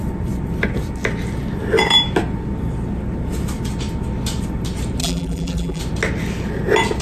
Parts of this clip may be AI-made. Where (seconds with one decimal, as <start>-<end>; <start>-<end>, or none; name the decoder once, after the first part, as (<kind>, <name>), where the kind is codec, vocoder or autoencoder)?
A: 5.0-5.8 (vocoder, BigVGAN v2)